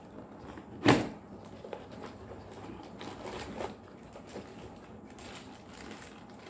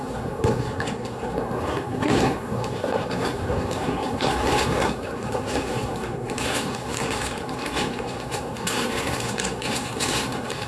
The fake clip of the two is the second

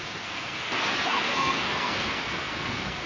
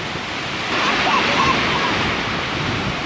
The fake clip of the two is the first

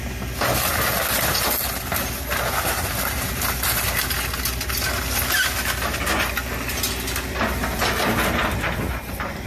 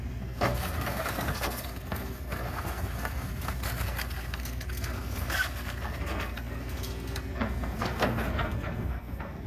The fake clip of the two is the second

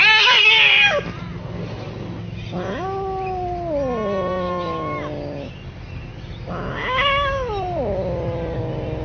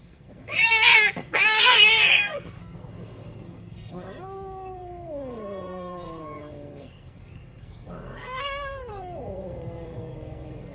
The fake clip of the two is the second